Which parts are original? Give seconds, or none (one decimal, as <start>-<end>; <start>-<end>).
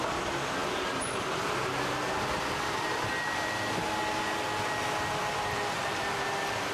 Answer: 0.0-6.7